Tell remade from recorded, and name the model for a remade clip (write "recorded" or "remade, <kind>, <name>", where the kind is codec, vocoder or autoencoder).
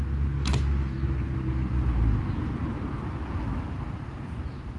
recorded